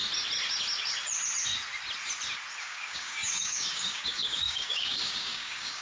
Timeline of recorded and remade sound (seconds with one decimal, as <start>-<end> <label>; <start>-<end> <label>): 0.0-2.6 recorded; 2.6-5.8 remade